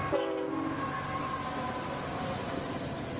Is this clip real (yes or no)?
yes